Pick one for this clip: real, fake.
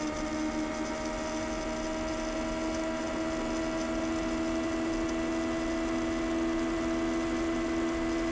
real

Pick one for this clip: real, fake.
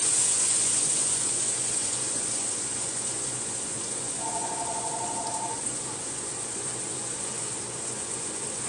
fake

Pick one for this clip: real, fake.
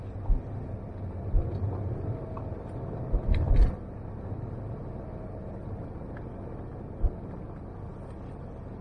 real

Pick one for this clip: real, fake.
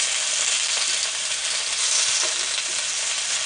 real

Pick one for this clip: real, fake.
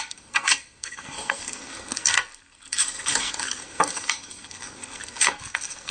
fake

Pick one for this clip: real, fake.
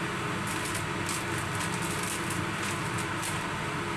real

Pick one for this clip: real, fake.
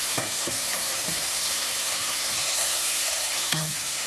fake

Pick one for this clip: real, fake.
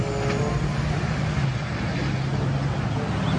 real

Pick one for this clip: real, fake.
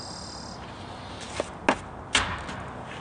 real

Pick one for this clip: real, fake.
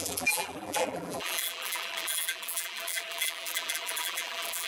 fake